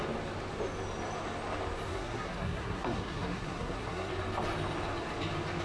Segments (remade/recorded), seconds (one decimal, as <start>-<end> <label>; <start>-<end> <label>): 0.0-1.9 recorded; 1.9-4.1 remade; 4.1-5.6 recorded